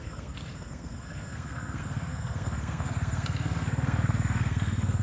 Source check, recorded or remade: remade